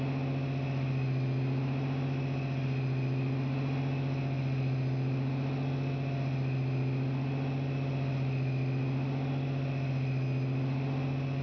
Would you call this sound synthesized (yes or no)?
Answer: no